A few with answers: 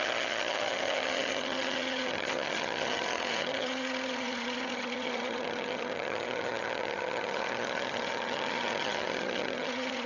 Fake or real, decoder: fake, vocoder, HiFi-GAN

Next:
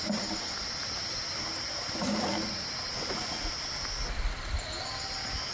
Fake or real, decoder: fake, vocoder, BigVGAN v2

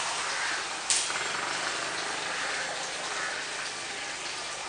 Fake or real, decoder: real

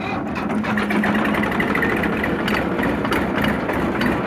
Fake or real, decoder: real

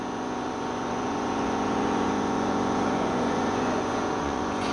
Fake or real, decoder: fake, vocoder, Vocos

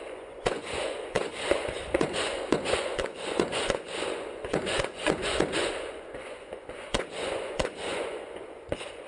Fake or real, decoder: fake, vocoder, Vocos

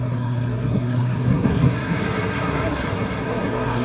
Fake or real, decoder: fake, codec, SNAC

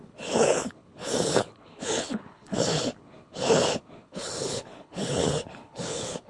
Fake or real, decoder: fake, codec, HILCodec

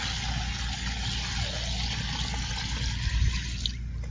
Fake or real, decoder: real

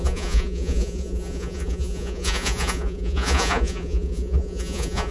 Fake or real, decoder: fake, vocoder, Vocos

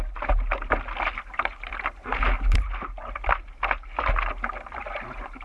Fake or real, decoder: real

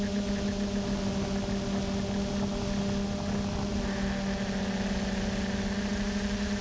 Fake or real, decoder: real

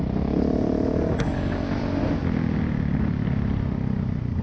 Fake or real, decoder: real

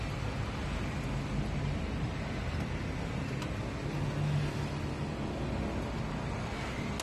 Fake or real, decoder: real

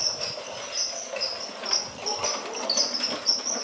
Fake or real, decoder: real